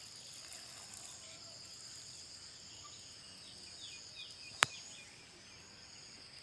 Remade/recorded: recorded